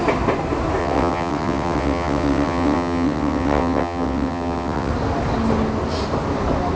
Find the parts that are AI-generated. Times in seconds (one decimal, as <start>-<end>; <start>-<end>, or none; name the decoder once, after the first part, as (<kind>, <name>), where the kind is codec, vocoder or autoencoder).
0.8-4.9 (vocoder, WaveNeXt)